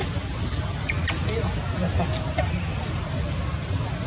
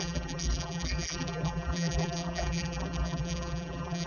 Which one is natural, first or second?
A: first